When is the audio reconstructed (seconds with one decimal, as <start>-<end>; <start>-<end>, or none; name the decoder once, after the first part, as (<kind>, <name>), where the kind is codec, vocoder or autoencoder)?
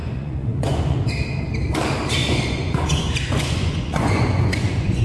0.0-1.1 (vocoder, Vocos); 2.2-5.0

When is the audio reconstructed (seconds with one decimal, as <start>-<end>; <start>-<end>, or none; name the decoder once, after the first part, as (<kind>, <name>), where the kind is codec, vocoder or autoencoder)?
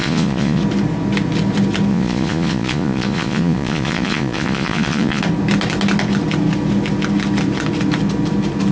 0.0-0.6 (vocoder, Vocos); 1.9-5.2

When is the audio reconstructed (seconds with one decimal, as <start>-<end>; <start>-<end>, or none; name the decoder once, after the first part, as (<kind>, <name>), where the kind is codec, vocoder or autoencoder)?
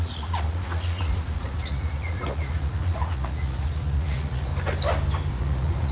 0.0-4.5 (vocoder, Vocos); 5.3-5.9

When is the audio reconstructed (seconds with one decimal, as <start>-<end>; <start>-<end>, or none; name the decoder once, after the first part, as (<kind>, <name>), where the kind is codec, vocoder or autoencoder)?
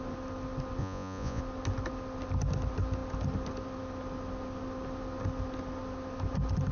0.8-1.4 (vocoder, Vocos)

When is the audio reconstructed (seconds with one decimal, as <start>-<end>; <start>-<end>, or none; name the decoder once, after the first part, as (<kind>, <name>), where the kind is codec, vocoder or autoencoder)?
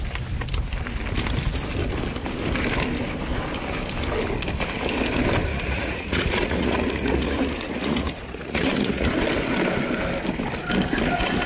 5.5-9.1 (vocoder, Vocos)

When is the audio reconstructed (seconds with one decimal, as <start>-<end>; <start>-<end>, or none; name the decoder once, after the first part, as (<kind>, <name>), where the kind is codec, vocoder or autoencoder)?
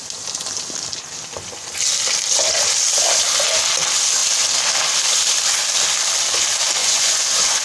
6.8-7.6 (vocoder, Vocos)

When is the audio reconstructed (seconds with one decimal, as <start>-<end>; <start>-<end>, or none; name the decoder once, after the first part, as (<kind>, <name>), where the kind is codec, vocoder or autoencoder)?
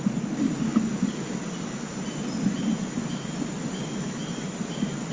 none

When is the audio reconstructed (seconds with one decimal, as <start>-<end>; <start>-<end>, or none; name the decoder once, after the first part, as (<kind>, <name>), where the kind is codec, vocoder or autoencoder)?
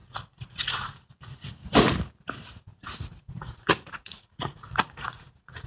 0.0-1.1 (vocoder, Vocos); 2.7-5.7